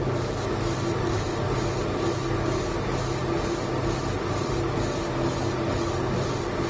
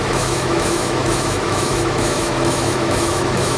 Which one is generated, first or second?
second